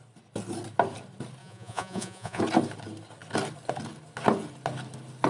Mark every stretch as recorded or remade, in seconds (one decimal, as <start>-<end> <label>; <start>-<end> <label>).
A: 0.0-1.4 recorded; 1.4-2.4 remade; 2.4-5.3 recorded